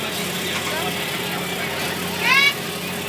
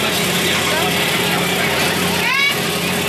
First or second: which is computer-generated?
second